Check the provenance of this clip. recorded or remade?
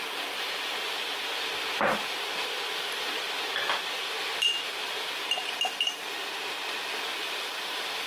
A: recorded